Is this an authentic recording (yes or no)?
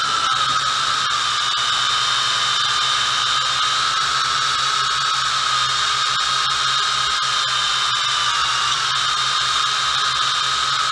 yes